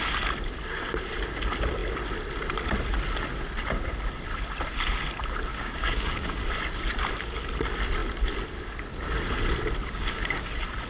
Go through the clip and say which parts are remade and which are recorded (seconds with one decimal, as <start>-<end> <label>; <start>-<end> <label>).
0.0-5.5 recorded; 5.5-6.4 remade; 6.4-9.8 recorded; 9.8-10.5 remade; 10.5-10.9 recorded